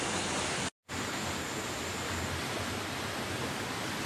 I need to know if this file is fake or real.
real